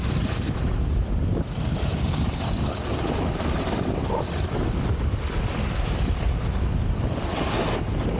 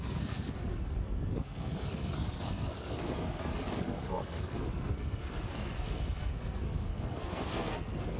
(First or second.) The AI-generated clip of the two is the second